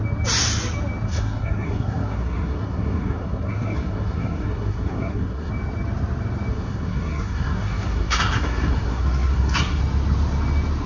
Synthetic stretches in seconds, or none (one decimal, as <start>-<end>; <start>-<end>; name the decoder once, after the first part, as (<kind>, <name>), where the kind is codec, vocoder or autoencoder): 1.1-5.5 (codec, SNAC); 6.5-9.8